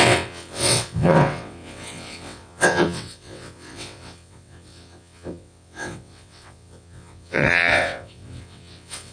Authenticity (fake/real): fake